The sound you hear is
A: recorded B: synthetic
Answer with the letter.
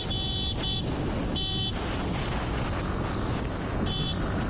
A